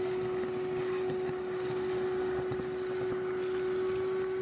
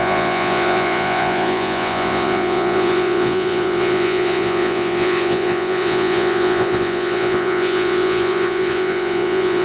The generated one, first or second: second